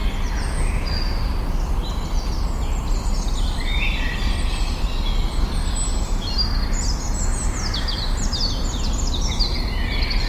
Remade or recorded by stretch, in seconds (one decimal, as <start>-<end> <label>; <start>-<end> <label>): 0.0-10.3 recorded